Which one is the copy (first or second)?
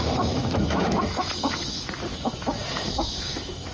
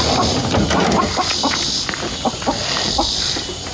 first